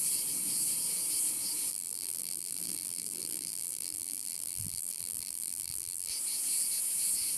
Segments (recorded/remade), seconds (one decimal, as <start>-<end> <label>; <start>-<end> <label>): 0.0-1.7 recorded; 1.7-6.1 remade; 6.1-7.4 recorded